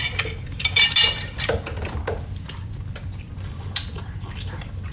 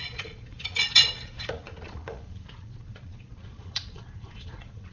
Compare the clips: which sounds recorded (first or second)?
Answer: first